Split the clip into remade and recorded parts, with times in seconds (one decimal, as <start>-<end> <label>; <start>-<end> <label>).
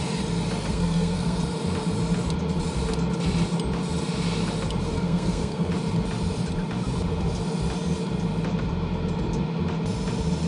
0.0-0.7 recorded; 0.7-1.4 remade; 1.4-4.9 recorded; 4.9-5.7 remade; 5.7-10.5 recorded